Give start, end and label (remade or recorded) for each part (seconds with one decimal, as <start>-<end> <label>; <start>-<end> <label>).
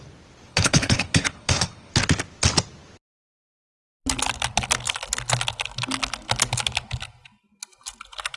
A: 0.0-0.5 recorded; 0.5-1.9 remade; 1.9-8.4 recorded